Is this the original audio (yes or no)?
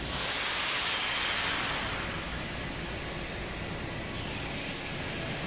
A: yes